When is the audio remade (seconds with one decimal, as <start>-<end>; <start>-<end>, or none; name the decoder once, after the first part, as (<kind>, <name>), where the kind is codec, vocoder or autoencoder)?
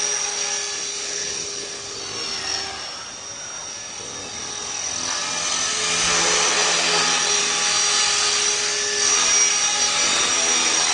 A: 0.9-2.0 (codec, HILCodec)